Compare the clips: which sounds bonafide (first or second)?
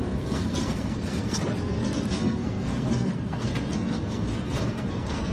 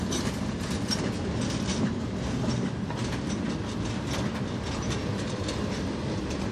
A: second